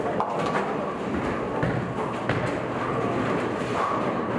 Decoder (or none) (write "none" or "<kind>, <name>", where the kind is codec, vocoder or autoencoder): none